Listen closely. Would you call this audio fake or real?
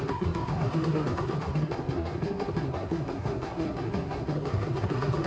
fake